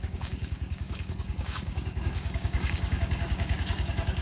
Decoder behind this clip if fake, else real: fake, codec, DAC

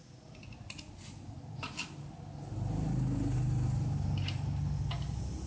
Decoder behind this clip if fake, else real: real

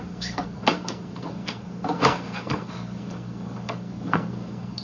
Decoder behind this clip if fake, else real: fake, codec, SNAC